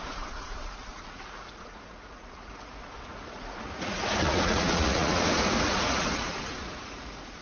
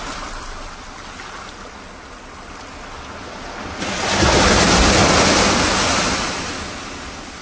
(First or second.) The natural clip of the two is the second